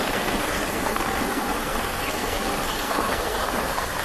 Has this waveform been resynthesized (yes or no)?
yes